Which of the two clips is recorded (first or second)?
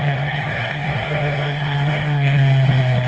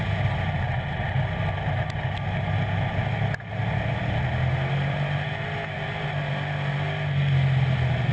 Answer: second